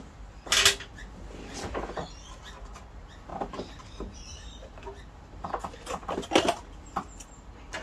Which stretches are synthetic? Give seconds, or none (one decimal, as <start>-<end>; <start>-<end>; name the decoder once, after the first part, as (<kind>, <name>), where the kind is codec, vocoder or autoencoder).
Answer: none